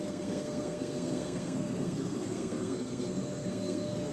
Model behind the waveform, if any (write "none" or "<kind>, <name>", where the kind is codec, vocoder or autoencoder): codec, SNAC